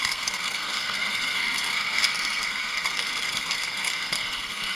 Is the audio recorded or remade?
remade